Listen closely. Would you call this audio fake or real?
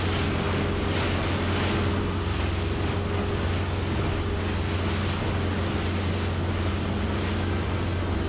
real